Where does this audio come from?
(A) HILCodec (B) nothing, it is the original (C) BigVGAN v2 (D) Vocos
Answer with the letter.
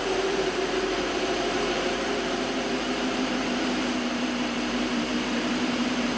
C